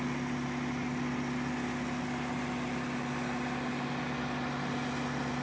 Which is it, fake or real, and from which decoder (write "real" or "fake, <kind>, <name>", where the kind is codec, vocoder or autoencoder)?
real